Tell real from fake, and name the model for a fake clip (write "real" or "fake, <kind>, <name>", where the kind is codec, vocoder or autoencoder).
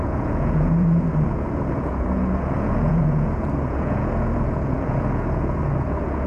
fake, vocoder, Vocos